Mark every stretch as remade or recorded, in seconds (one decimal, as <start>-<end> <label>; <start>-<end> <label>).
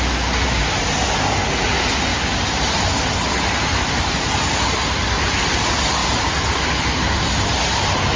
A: 0.0-2.1 recorded; 2.1-2.8 remade; 2.8-8.2 recorded